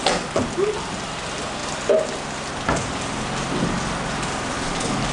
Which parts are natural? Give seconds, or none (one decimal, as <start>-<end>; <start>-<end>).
0.0-5.1